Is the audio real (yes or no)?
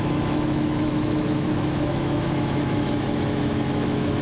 no